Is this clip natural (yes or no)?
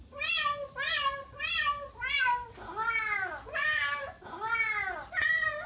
yes